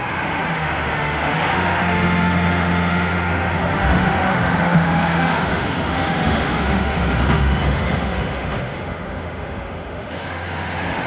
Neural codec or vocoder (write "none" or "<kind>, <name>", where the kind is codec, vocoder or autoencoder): autoencoder, DAC-VAE